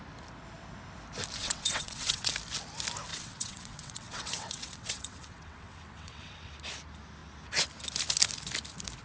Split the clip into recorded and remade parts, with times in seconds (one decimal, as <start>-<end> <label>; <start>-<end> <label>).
0.0-1.4 recorded; 1.4-2.3 remade; 2.3-3.1 recorded; 3.1-6.5 remade; 6.5-9.0 recorded